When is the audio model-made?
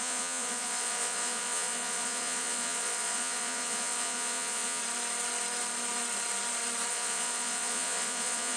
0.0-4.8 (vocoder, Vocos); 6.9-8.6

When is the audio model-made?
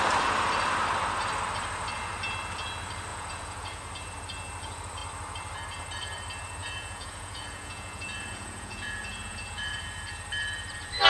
3.1-3.8 (vocoder, Vocos); 6.6-9.8